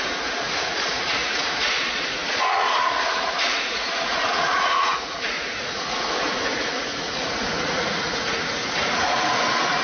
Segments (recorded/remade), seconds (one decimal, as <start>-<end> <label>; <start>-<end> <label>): 0.0-9.8 remade